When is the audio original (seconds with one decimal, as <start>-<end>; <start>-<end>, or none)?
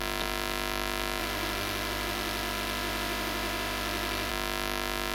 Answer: 0.0-1.2; 4.3-5.1